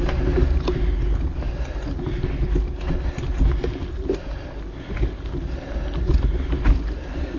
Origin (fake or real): real